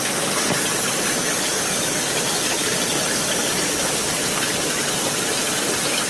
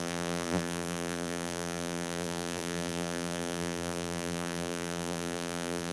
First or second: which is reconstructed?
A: second